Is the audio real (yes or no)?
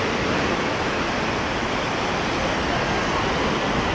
yes